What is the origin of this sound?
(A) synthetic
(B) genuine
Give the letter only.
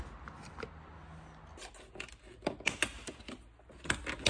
B